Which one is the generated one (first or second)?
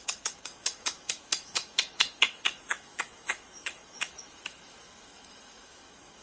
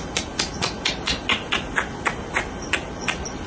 first